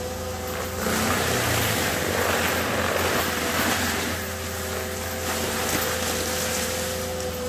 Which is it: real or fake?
real